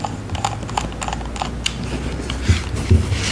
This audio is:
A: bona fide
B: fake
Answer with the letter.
A